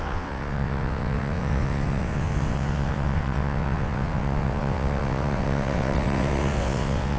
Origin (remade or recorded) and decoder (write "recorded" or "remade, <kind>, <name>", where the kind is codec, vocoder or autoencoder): remade, vocoder, WaveNeXt